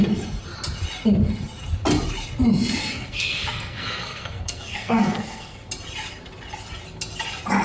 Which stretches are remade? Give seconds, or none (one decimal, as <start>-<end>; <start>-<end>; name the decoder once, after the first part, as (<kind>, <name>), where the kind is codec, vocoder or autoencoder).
2.8-5.7 (codec, SNAC)